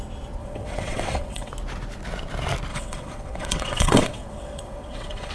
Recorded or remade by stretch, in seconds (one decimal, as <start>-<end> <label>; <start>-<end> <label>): 0.0-0.4 recorded; 0.4-1.5 remade; 1.5-2.7 recorded; 2.7-5.3 remade